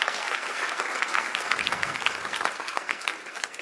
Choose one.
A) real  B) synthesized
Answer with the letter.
B